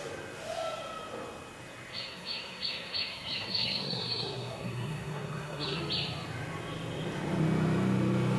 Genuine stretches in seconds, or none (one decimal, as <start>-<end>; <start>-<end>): 0.0-1.9; 5.8-8.4